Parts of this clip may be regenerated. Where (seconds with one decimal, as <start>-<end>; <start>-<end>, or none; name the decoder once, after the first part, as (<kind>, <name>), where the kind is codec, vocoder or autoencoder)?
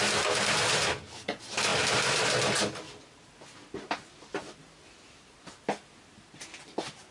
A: none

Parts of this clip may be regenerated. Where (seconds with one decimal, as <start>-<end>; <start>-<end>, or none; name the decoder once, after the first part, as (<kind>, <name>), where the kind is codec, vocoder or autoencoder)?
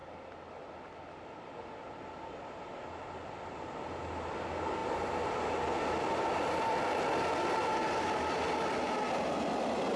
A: none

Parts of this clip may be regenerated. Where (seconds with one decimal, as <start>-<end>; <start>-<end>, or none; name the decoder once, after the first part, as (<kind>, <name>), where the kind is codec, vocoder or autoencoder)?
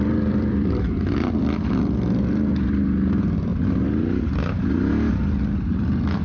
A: 0.0-3.5 (vocoder, BigVGAN v2); 5.1-6.2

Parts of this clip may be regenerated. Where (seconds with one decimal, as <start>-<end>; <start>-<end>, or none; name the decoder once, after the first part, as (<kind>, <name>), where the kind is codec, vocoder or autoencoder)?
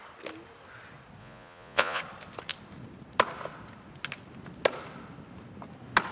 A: 1.2-2.0 (vocoder, Vocos)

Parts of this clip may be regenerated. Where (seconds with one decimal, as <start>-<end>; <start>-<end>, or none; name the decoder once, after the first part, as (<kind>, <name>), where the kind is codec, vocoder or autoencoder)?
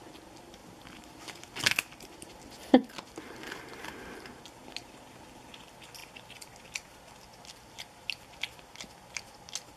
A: none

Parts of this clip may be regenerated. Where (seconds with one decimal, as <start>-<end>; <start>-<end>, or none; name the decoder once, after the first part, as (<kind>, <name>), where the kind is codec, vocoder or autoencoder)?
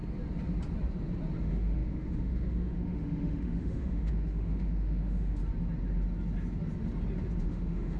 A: 1.4-5.4 (autoencoder, DAC-VAE); 7.4-8.0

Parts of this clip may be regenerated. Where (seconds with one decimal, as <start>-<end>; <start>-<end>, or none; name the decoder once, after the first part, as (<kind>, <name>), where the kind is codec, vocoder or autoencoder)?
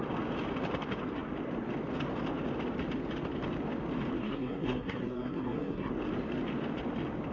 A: 4.2-5.9 (codec, SNAC)